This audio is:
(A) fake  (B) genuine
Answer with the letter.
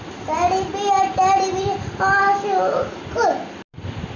B